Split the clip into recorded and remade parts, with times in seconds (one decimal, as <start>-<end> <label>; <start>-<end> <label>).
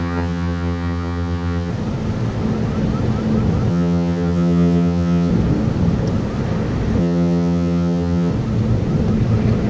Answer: 0.0-1.7 remade; 1.7-3.7 recorded; 3.7-5.3 remade; 5.3-7.0 recorded; 7.0-8.3 remade; 8.3-9.7 recorded